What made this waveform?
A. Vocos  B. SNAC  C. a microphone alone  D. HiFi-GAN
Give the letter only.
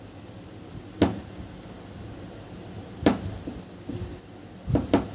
C